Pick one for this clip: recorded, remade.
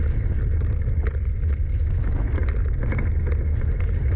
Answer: recorded